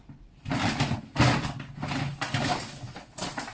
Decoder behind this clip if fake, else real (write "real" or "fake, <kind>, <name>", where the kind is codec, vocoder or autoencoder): real